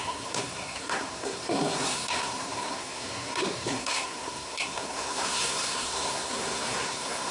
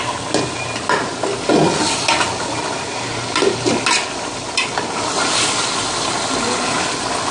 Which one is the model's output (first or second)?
first